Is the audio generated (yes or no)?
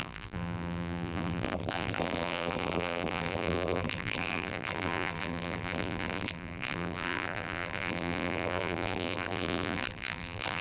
yes